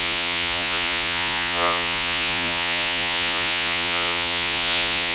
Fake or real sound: fake